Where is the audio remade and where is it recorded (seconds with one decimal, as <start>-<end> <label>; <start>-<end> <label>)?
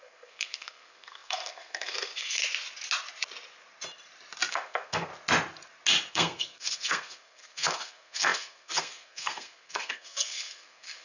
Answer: 0.0-2.4 remade; 2.4-4.5 recorded; 4.5-5.1 remade; 5.1-6.1 recorded; 6.1-11.0 remade